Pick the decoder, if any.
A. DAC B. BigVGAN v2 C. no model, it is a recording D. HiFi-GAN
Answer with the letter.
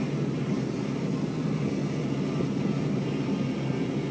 C